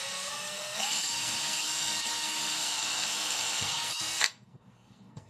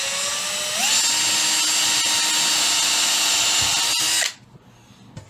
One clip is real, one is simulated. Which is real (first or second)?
second